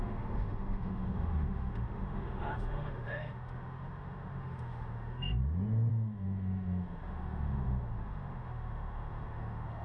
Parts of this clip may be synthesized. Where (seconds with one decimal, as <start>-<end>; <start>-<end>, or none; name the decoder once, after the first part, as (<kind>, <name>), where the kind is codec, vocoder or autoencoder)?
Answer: 0.0-5.4 (autoencoder, DAC-VAE); 5.9-9.8

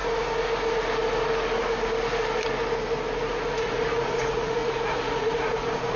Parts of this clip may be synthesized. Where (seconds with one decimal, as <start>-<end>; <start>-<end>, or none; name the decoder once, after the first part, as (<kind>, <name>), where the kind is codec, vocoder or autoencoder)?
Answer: 3.6-6.0 (vocoder, Vocos)

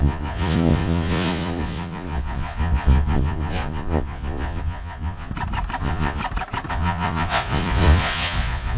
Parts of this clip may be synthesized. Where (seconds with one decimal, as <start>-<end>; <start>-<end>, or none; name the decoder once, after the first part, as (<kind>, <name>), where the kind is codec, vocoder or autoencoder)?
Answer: 0.0-5.3 (vocoder, Vocos); 5.8-6.2; 6.7-8.8

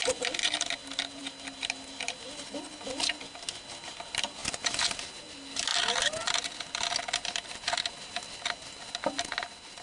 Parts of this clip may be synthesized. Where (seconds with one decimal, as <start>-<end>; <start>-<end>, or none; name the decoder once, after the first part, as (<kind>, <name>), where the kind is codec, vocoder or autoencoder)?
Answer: none

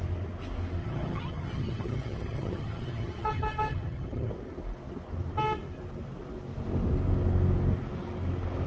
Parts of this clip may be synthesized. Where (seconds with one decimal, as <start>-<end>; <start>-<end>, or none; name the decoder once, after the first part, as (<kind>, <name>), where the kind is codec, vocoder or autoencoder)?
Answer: 0.8-4.3 (vocoder, HiFi-GAN)

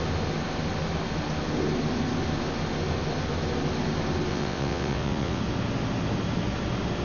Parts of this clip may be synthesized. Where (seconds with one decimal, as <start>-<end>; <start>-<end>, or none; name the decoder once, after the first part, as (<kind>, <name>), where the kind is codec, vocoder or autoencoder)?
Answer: 4.3-5.4 (vocoder, WaveNeXt)

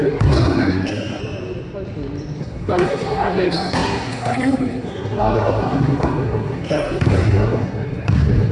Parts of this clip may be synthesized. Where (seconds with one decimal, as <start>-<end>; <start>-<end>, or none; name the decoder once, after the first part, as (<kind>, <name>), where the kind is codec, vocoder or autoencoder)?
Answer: 0.0-1.2 (codec, SNAC); 2.4-8.5

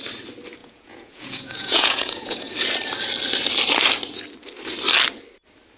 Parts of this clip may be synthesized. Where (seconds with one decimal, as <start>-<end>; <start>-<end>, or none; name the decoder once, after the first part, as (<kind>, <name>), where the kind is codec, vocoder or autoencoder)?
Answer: 0.6-2.5 (vocoder, Vocos)